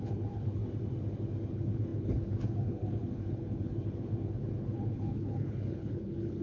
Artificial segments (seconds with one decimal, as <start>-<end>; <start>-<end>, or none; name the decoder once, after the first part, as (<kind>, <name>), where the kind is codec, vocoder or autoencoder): 0.0-0.6 (codec, HILCodec); 1.5-6.4